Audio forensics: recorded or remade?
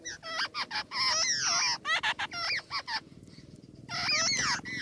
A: recorded